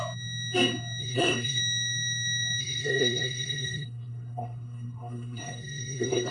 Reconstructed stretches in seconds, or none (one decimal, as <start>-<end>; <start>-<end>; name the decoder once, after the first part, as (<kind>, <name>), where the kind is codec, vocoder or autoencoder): 1.0-1.6 (codec, SNAC); 2.6-6.3